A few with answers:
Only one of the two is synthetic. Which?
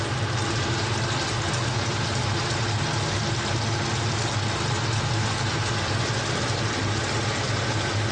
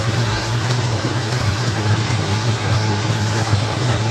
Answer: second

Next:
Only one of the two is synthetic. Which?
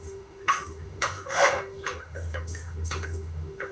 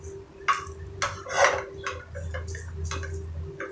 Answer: first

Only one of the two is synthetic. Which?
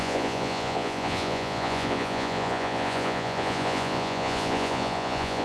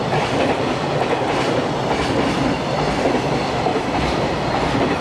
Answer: first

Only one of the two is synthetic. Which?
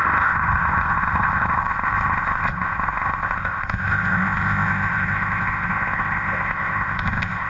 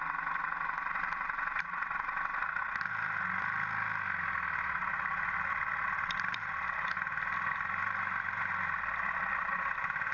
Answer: first